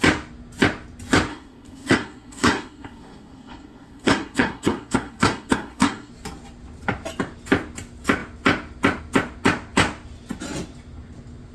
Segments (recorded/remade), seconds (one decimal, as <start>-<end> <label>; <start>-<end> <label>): 0.0-1.3 recorded; 1.3-6.1 remade; 6.1-11.5 recorded

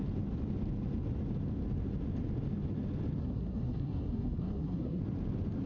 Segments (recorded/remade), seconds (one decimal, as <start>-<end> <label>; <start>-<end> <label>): 0.0-3.2 recorded; 3.2-5.0 remade; 5.0-5.7 recorded

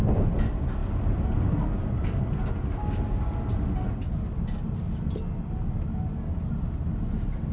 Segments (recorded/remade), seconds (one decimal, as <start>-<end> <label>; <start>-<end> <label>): 0.0-7.5 recorded

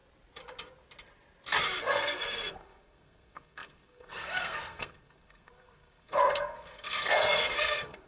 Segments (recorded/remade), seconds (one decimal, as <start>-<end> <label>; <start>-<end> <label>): 0.0-1.8 recorded; 1.8-8.1 remade

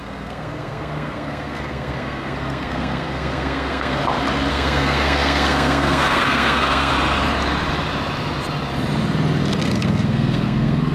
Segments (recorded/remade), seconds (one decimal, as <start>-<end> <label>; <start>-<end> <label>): 0.0-4.0 remade; 4.0-4.5 recorded; 4.5-6.9 remade; 6.9-9.6 recorded; 9.6-10.9 remade

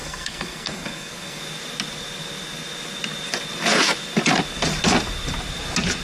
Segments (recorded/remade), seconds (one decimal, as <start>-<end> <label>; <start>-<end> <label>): 0.0-1.4 remade; 1.4-6.0 recorded

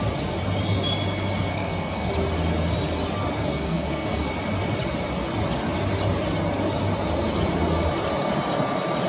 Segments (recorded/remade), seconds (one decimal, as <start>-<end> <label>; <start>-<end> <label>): 0.0-1.5 recorded; 1.5-2.1 remade; 2.1-3.5 recorded; 3.5-4.3 remade; 4.3-9.1 recorded

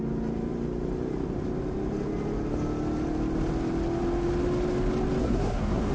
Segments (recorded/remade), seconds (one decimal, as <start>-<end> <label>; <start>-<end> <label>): 0.0-5.2 recorded; 5.2-5.9 remade